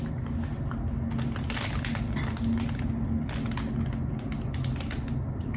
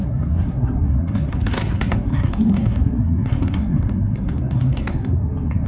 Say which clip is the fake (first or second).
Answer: second